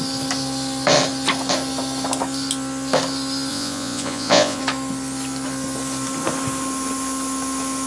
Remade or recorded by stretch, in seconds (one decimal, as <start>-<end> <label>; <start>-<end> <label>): 0.0-3.5 recorded; 3.5-4.6 remade; 4.6-7.9 recorded

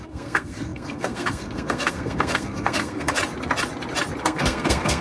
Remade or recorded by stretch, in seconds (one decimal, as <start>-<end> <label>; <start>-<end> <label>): 0.0-3.2 remade; 3.2-4.2 recorded; 4.2-5.0 remade

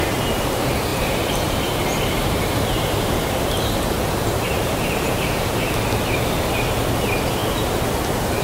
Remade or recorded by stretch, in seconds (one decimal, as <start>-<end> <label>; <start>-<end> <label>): 0.0-0.9 recorded; 0.9-5.7 remade; 5.7-8.4 recorded